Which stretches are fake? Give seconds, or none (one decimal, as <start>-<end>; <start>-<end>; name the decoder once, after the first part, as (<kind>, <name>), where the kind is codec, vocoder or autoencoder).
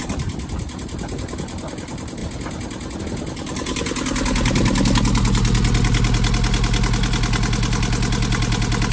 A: none